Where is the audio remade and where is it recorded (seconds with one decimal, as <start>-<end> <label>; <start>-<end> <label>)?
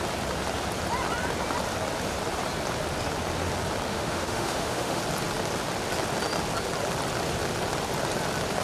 0.0-3.9 recorded; 3.9-5.0 remade; 5.0-8.6 recorded